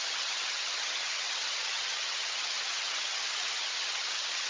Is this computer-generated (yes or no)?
yes